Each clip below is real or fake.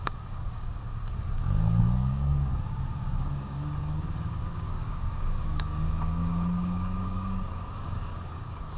fake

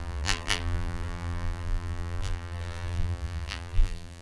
fake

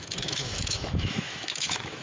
fake